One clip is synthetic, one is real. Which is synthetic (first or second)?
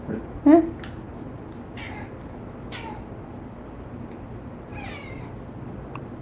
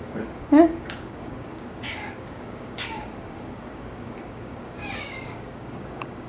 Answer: second